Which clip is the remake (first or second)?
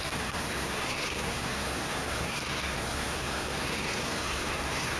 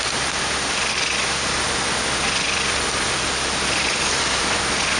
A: first